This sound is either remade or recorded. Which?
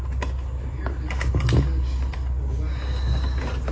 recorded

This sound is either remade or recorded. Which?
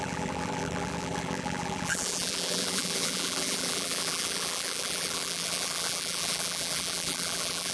remade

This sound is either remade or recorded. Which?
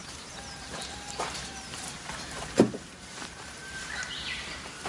remade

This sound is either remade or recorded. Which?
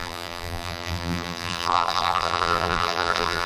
remade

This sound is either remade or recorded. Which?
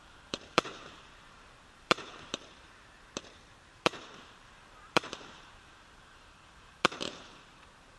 remade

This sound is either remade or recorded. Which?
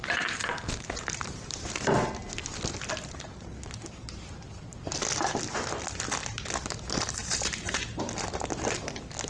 recorded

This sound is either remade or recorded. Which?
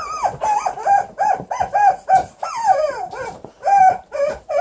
remade